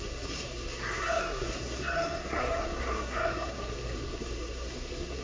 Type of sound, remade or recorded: remade